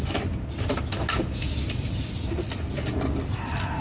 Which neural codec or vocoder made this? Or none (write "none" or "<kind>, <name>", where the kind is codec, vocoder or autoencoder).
none